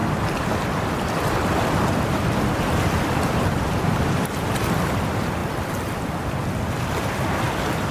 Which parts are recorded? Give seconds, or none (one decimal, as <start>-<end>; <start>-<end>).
4.1-5.4